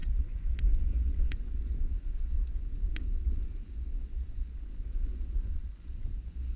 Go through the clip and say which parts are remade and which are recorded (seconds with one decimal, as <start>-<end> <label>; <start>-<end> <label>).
0.0-6.6 remade